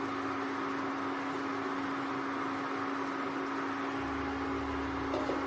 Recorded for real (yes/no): yes